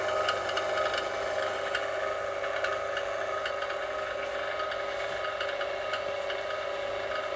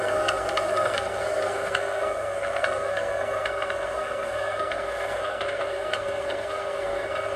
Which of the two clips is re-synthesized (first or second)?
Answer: second